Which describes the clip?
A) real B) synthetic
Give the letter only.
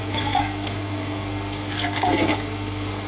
B